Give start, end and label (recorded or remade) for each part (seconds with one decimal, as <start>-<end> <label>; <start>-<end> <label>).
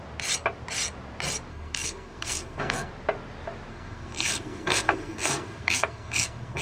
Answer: 0.0-1.5 recorded; 1.5-2.9 remade; 2.9-3.7 recorded; 3.7-6.6 remade